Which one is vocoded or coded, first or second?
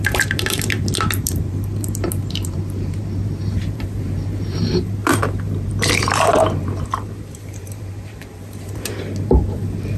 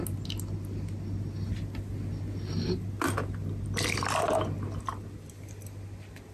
first